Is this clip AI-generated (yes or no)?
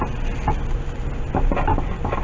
no